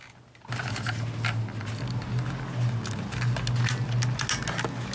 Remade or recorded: recorded